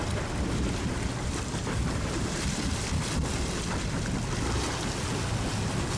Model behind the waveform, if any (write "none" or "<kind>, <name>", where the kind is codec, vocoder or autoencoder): none